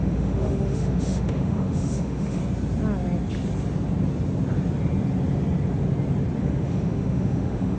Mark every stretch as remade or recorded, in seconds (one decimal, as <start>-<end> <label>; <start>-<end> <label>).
0.0-2.4 remade; 2.4-6.4 recorded; 6.4-7.8 remade